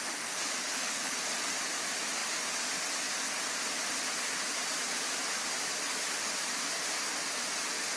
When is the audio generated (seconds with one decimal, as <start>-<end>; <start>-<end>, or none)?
0.6-1.2

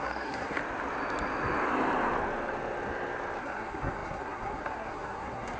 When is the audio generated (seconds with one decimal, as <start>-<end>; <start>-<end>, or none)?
0.0-0.6; 3.4-5.6

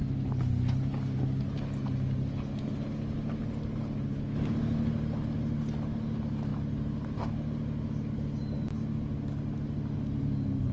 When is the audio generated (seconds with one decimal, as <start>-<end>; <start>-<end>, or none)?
none

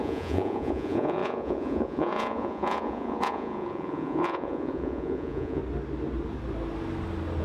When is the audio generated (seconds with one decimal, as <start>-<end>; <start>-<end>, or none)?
0.0-5.6

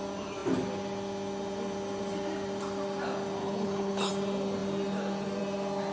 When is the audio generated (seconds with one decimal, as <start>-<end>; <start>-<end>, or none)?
3.4-4.1

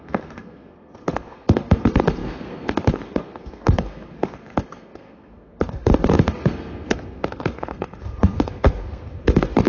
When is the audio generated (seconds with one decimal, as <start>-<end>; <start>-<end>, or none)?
0.0-9.7

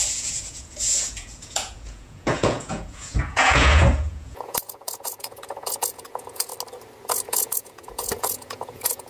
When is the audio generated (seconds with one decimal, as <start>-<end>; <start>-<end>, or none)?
0.0-6.5; 7.2-9.1

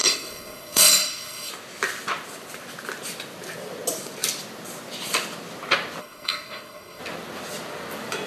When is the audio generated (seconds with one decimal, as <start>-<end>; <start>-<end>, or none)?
0.0-1.5; 6.0-7.0